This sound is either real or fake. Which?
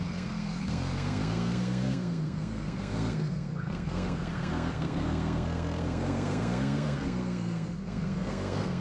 fake